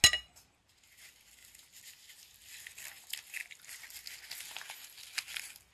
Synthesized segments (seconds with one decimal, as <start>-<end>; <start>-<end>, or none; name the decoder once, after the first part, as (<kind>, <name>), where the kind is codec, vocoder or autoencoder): none